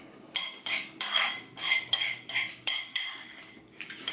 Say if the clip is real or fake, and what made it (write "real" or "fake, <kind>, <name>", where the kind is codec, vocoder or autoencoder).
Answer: fake, codec, DAC